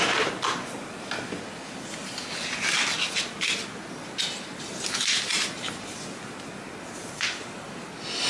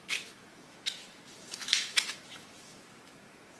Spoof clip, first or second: second